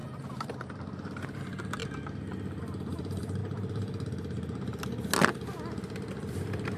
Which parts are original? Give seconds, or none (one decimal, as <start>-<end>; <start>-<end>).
1.8-2.6; 3.4-6.1